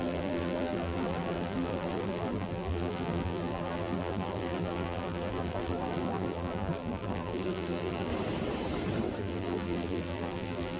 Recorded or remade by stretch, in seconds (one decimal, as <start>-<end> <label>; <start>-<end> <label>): 0.0-8.1 remade; 8.1-9.2 recorded; 9.2-10.8 remade